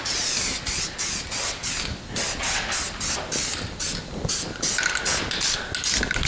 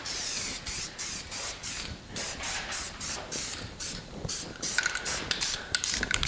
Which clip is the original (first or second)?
first